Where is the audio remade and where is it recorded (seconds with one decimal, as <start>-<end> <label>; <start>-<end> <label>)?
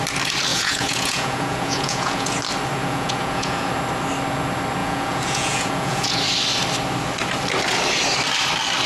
0.0-0.5 recorded; 0.5-2.4 remade; 2.4-2.8 recorded; 2.8-3.7 remade; 3.7-4.8 recorded; 4.8-6.2 remade; 6.2-8.9 recorded